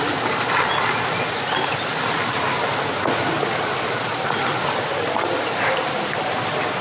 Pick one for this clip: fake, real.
real